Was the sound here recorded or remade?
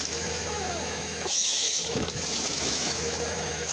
remade